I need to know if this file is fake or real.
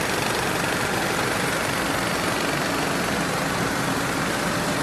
real